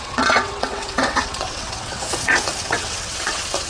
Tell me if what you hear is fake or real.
fake